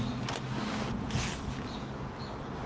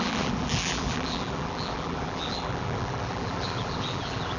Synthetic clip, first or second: second